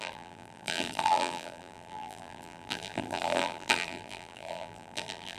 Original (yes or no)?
no